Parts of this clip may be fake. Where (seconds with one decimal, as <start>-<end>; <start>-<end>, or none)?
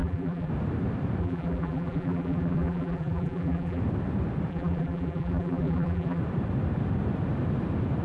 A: 0.0-0.5; 1.2-3.8; 4.5-6.2